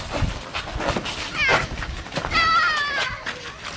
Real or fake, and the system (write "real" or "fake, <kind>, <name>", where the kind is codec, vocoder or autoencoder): real